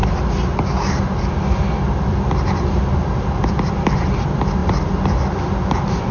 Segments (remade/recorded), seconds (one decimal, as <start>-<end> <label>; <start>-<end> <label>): 0.0-6.1 recorded